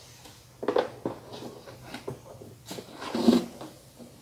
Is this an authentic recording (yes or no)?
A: yes